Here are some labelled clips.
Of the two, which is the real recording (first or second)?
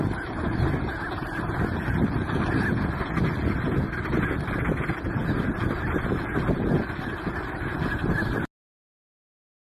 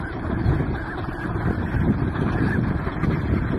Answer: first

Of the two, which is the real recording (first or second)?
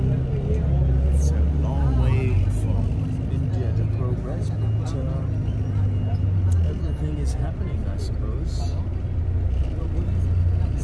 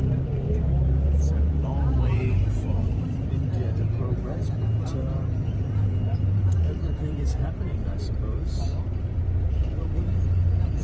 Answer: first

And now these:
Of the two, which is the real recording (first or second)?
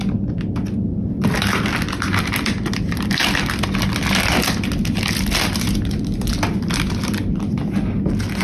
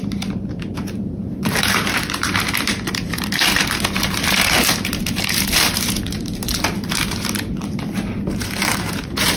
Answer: first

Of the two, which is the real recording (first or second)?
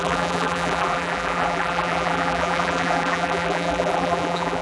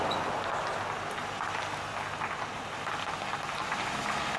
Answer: second